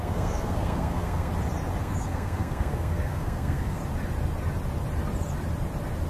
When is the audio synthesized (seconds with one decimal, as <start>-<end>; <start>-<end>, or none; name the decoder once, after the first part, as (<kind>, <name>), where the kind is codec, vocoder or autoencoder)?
0.0-1.3 (codec, SNAC); 1.8-3.8